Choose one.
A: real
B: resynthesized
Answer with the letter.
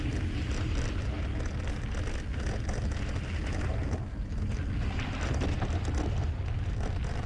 A